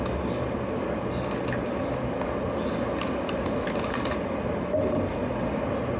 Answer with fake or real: real